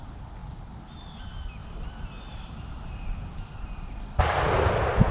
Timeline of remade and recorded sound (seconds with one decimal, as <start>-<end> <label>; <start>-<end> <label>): 0.0-5.1 recorded